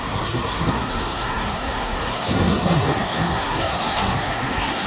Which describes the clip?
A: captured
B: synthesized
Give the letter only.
B